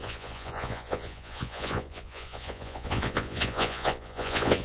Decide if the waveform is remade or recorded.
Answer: remade